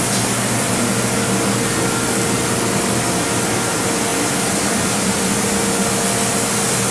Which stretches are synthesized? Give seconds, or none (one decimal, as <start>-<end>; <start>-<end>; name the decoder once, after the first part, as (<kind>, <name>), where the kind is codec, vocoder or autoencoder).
none